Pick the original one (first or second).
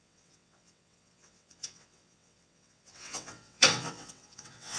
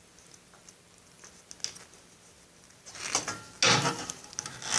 second